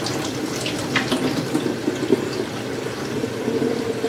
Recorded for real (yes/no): yes